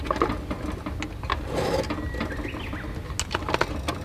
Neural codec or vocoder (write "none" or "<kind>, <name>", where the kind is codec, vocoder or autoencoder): none